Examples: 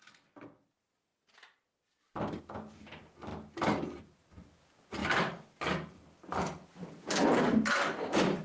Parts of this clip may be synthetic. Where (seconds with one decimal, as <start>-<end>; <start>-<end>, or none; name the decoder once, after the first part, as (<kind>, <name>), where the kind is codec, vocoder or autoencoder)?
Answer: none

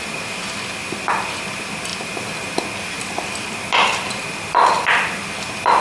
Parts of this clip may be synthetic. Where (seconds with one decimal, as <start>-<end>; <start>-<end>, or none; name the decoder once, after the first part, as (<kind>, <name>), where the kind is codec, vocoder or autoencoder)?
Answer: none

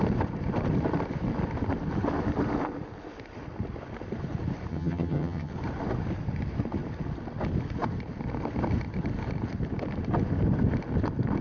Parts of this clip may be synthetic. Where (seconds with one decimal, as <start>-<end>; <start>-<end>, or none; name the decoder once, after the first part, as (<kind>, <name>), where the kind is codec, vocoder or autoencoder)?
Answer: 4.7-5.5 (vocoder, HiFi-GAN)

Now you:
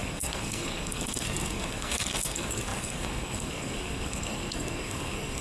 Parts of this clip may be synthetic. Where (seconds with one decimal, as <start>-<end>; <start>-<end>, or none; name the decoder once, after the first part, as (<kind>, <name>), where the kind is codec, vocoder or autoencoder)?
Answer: 0.0-5.4 (codec, SNAC)